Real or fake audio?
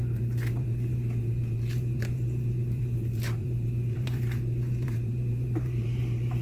fake